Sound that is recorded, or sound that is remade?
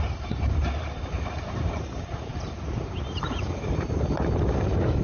remade